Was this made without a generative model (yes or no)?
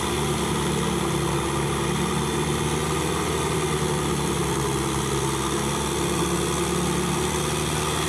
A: yes